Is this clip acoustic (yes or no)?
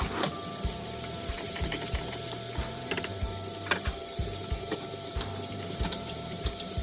no